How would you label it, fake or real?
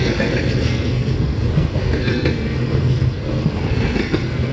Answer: fake